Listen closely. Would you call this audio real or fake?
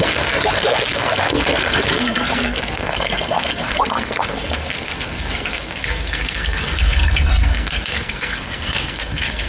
fake